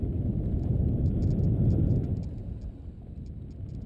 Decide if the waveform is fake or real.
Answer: real